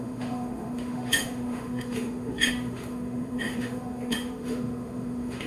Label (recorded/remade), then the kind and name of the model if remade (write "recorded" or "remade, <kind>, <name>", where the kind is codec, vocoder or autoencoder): remade, autoencoder, DAC-VAE